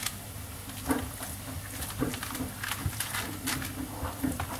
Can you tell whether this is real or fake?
real